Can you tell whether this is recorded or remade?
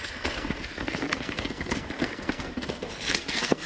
remade